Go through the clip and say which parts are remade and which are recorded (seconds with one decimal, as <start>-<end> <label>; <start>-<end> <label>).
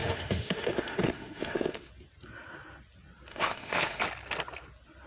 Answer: 0.0-1.9 remade; 1.9-3.3 recorded; 3.3-4.0 remade; 4.0-5.1 recorded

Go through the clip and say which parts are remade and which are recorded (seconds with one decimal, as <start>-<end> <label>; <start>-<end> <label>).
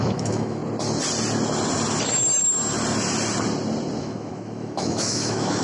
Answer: 0.0-0.6 remade; 0.6-4.0 recorded; 4.0-5.6 remade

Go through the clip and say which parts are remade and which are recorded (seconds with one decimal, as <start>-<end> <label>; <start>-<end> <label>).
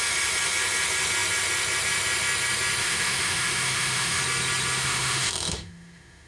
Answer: 0.0-2.8 recorded; 2.8-4.2 remade; 4.2-4.8 recorded; 4.8-6.3 remade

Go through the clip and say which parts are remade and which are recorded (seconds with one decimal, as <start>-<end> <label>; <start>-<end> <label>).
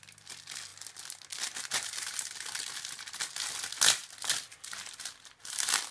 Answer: 0.0-5.9 recorded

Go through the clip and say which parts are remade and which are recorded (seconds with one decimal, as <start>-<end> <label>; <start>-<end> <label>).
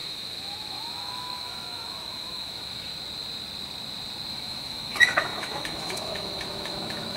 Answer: 0.0-2.9 remade; 2.9-4.3 recorded; 4.3-7.2 remade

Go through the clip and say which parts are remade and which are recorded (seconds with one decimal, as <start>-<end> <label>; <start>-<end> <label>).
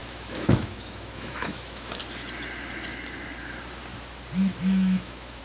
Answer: 0.0-2.0 remade; 2.0-4.5 recorded; 4.5-5.4 remade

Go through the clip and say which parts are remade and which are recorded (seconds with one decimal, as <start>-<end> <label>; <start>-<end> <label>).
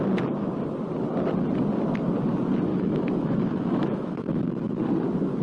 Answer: 0.0-2.7 recorded; 2.7-4.4 remade; 4.4-5.4 recorded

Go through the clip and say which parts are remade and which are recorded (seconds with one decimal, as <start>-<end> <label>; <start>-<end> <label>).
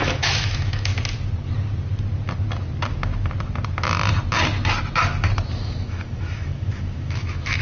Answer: 0.0-0.9 remade; 0.9-5.5 recorded; 5.5-7.6 remade